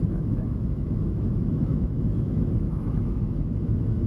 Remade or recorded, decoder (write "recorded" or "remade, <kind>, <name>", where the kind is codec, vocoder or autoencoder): remade, autoencoder, DAC-VAE